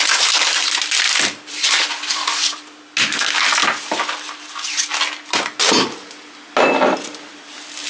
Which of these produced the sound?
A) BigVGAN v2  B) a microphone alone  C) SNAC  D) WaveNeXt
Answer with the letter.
B